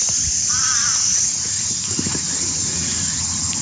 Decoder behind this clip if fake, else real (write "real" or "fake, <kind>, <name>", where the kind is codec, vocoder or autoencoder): fake, vocoder, Vocos